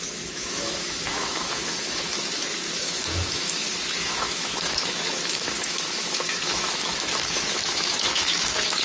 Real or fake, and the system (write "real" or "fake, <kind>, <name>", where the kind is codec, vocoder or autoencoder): fake, autoencoder, DAC-VAE